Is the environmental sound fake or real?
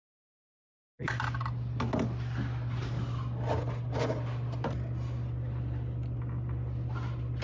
real